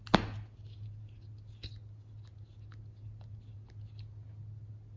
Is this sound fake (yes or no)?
no